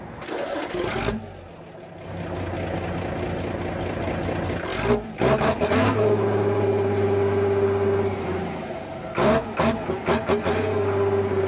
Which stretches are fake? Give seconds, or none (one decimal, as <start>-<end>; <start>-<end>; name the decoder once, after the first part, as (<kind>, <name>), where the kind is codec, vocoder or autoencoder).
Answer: none